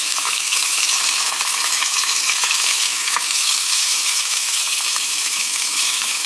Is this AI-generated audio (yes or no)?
yes